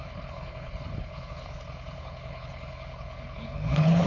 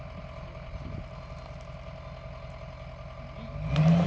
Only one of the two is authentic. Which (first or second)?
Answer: second